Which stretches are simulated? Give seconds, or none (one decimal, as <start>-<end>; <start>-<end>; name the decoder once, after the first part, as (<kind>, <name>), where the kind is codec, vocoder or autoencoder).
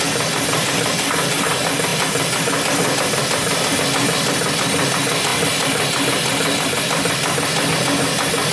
none